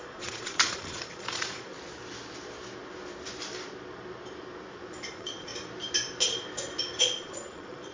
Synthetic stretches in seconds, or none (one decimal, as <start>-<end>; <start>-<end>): 0.0-1.7; 5.1-5.5; 7.0-7.9